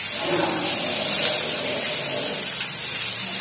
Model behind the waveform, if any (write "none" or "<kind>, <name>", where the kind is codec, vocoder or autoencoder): none